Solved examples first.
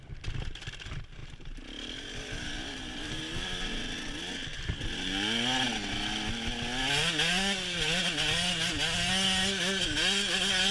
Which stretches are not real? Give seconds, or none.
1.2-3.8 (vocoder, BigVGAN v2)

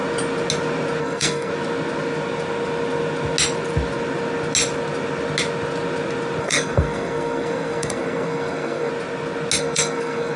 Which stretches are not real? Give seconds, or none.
1.0-1.5 (codec, SNAC); 6.4-8.9; 9.6-10.4

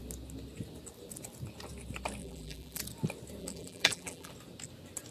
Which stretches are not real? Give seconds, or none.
2.2-2.8 (vocoder, BigVGAN v2); 3.4-4.3

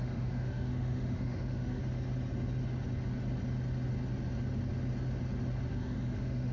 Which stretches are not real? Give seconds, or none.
0.0-1.8 (autoencoder, DAC-VAE); 5.7-6.5

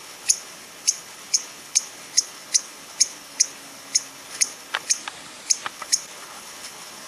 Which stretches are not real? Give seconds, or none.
0.0-5.0 (codec, HILCodec); 5.7-7.1

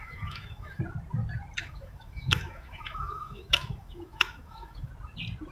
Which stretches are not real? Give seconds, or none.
0.0-0.8 (autoencoder, DAC-VAE); 1.6-4.9

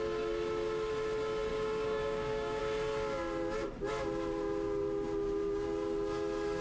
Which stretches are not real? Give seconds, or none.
1.5-2.6 (codec, DAC)